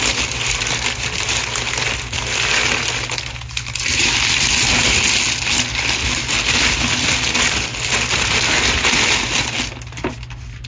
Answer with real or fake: real